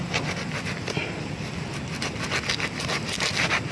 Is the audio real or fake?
real